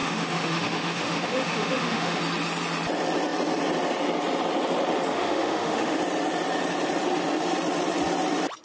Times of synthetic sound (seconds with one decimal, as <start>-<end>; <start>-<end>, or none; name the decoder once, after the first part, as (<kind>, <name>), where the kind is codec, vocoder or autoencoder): 0.0-2.2 (autoencoder, DAC-VAE); 5.1-6.0